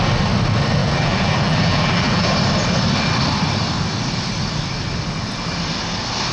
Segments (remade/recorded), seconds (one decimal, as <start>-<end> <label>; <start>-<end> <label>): 0.0-0.8 recorded; 0.8-2.3 remade; 2.3-6.3 recorded